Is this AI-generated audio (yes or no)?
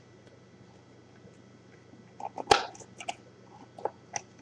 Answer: no